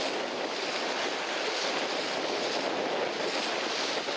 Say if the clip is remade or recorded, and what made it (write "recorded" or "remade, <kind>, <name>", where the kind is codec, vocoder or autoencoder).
recorded